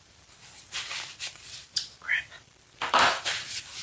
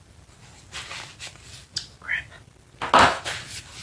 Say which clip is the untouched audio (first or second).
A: second